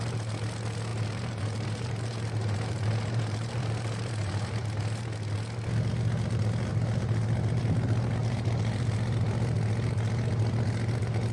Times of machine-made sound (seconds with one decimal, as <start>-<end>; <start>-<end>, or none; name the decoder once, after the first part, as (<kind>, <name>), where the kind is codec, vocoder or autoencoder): 0.9-5.0 (vocoder, BigVGAN v2); 8.2-8.9